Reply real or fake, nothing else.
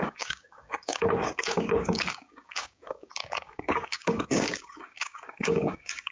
fake